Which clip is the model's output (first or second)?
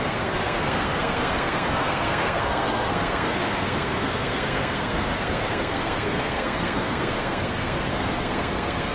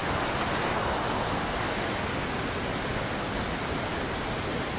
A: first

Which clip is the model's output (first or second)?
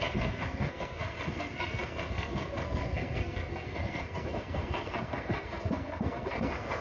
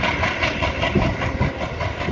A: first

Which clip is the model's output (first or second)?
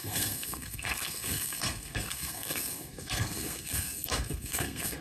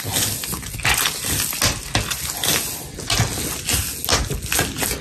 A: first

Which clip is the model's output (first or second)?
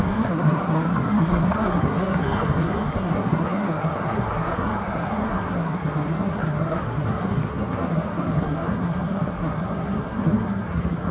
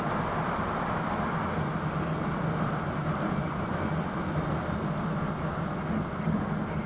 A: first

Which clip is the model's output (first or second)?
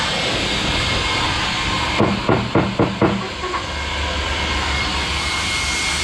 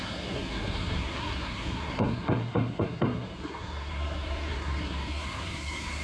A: second